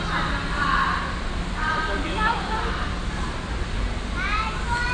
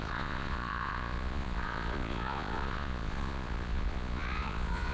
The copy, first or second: second